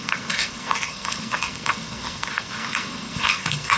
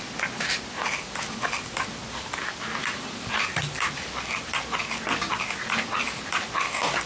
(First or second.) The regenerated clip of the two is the first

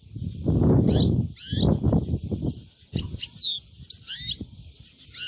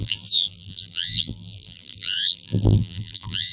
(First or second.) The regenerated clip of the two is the second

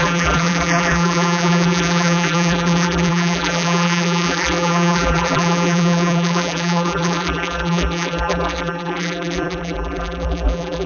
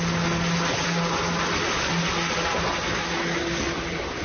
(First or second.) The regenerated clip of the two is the first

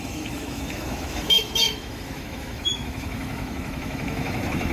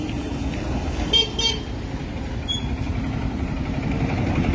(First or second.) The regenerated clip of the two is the first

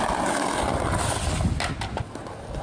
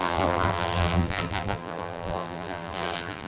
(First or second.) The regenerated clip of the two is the second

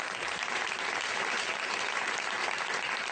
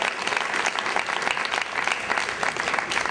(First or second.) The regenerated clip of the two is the first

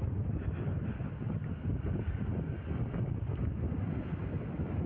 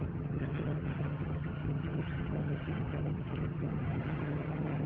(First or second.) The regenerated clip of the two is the second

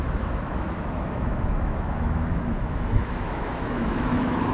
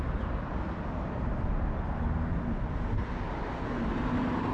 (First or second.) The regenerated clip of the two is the first